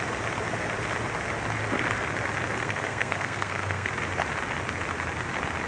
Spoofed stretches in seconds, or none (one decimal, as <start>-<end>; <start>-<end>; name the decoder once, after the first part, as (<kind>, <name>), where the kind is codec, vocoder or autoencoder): 2.6-3.9 (codec, SNAC)